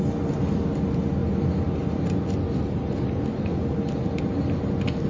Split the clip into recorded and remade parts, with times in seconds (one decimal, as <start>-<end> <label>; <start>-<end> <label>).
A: 0.0-5.1 recorded